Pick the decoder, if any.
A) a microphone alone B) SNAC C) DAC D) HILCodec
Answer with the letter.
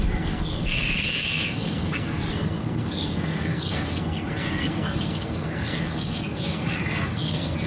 B